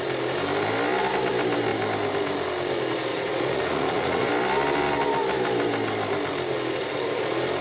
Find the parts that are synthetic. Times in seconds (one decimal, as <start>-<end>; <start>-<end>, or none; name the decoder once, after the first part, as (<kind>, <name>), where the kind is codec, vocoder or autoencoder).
3.1-4.3 (vocoder, Vocos)